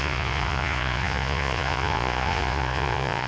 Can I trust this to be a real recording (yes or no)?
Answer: no